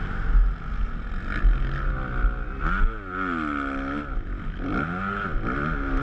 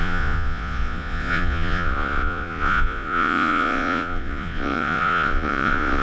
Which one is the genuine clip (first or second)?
first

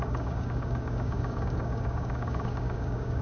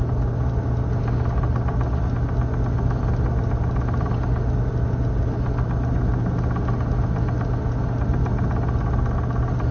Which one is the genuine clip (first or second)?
second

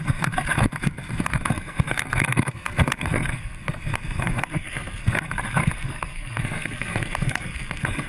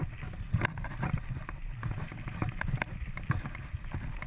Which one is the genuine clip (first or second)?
second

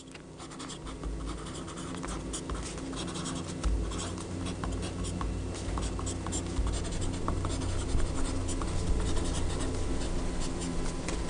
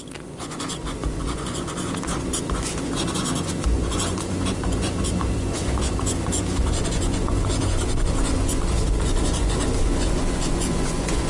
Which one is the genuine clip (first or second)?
first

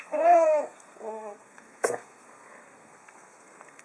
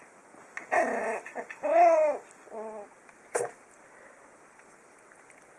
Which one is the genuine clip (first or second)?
second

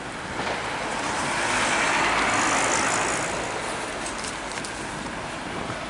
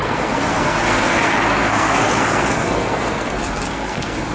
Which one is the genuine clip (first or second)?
first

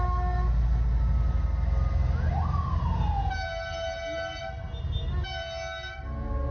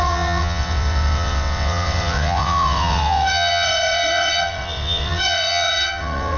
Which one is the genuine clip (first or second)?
first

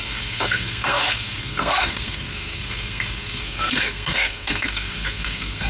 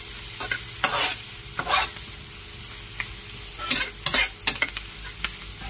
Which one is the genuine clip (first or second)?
second